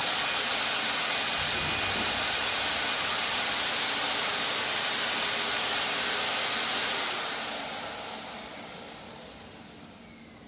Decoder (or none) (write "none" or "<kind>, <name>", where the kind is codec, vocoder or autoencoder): none